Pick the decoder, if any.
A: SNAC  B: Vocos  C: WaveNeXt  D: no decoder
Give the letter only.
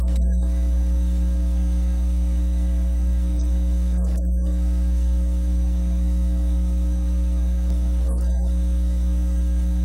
A